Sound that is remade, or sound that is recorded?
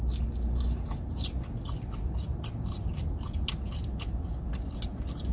recorded